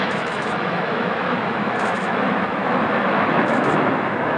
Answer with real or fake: fake